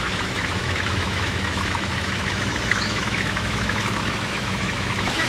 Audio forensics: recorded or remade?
remade